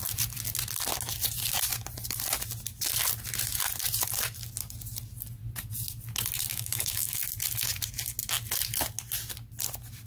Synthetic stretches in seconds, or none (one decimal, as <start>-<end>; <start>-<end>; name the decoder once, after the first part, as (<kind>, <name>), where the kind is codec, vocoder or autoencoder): 6.5-7.2 (autoencoder, DAC-VAE)

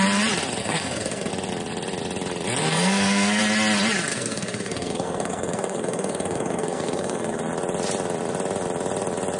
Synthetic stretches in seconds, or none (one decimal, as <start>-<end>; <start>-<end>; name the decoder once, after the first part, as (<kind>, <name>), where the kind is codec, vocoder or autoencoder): 0.6-1.3 (codec, SNAC); 2.6-3.4; 4.1-7.4

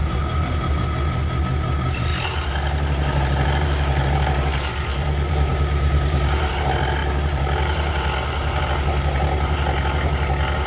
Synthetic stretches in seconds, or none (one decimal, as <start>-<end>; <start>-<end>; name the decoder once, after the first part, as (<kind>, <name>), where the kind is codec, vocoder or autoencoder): 0.0-0.8 (vocoder, BigVGAN v2); 2.1-6.5; 7.0-8.6